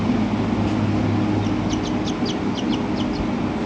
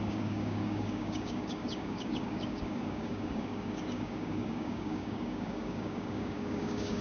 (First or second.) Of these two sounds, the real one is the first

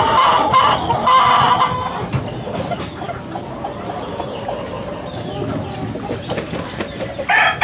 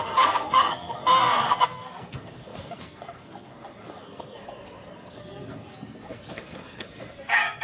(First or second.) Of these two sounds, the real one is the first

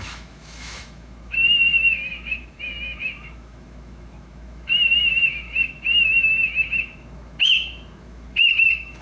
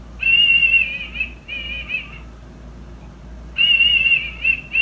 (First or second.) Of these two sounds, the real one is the second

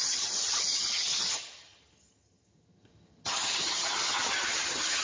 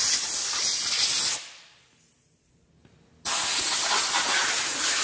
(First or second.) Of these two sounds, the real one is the second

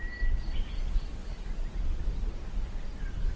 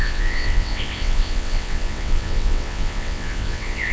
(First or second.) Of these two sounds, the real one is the first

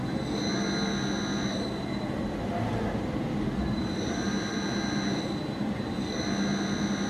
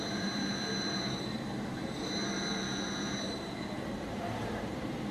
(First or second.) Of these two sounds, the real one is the first